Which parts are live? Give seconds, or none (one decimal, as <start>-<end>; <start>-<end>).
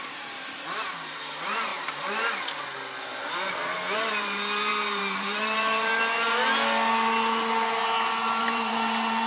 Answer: 1.7-3.1; 5.9-8.4